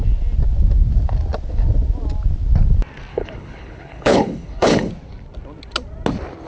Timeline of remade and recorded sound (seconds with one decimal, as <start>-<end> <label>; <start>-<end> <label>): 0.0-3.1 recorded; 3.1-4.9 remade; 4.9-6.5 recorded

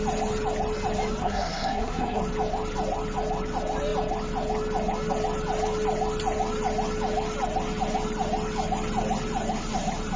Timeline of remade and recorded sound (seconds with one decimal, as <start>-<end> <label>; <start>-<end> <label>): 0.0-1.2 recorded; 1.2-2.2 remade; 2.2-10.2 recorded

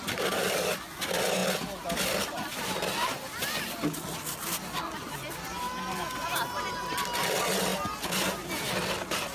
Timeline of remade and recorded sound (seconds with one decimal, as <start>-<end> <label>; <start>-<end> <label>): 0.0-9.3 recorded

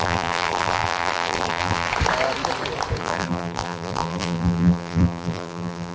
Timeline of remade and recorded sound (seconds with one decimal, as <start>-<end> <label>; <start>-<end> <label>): 0.0-1.9 remade; 1.9-3.0 recorded; 3.0-5.9 remade

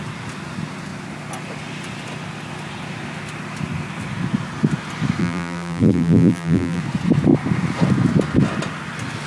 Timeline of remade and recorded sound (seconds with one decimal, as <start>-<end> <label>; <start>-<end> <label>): 0.0-5.2 recorded; 5.2-6.8 remade; 6.8-9.3 recorded

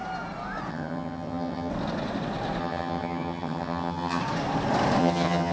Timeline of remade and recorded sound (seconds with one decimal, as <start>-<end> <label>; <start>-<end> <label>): 0.0-0.7 recorded; 0.7-1.7 remade; 1.7-2.6 recorded; 2.6-4.2 remade; 4.2-5.0 recorded; 5.0-5.5 remade